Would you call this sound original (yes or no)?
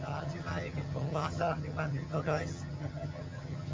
no